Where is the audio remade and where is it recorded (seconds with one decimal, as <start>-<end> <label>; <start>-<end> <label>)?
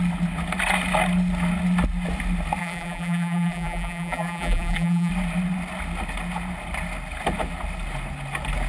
0.0-2.6 recorded; 2.6-5.1 remade; 5.1-8.7 recorded